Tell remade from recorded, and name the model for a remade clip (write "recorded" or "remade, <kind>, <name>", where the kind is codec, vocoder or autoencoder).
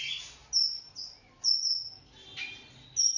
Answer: recorded